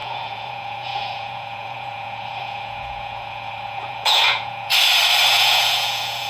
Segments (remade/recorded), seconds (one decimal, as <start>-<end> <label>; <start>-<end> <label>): 0.0-4.7 remade; 4.7-5.3 recorded; 5.3-6.3 remade